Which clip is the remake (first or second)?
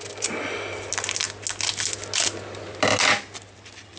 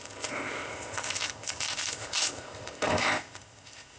second